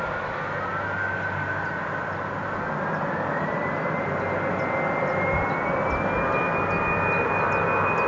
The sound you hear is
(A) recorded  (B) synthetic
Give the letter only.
A